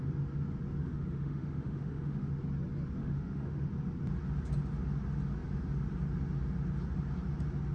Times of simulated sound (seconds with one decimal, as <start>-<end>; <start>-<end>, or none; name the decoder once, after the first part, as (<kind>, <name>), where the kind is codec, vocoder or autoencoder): 0.8-2.3 (autoencoder, DAC-VAE); 3.0-3.7